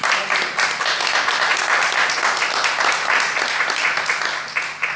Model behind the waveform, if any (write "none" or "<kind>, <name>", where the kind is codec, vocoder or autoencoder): none